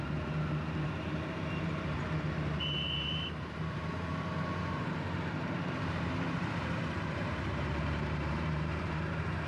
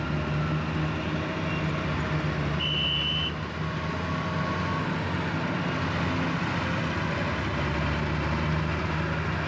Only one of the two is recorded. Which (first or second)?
second